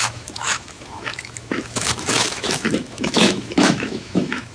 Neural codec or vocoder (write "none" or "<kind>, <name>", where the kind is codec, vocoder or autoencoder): autoencoder, DAC-VAE